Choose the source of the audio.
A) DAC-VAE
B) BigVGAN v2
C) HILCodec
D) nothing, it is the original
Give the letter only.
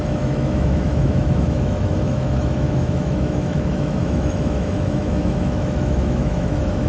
A